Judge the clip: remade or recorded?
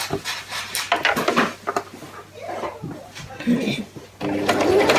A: recorded